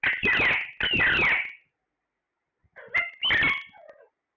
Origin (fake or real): real